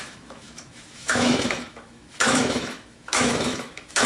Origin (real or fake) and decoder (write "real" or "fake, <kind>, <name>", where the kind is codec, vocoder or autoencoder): fake, autoencoder, DAC-VAE